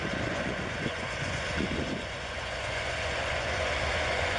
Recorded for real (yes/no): no